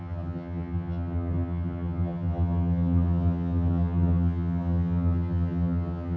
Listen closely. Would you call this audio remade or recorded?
remade